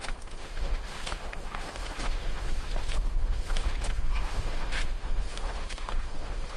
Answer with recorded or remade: remade